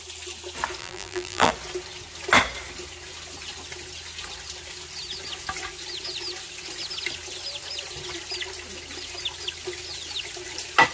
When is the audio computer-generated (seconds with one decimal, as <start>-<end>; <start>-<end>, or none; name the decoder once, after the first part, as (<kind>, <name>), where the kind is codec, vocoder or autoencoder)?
0.8-1.5 (vocoder, BigVGAN v2)